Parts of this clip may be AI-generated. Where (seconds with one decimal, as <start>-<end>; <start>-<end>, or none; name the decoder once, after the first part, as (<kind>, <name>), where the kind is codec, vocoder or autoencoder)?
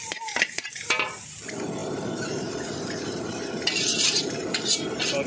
0.0-5.3 (vocoder, BigVGAN v2)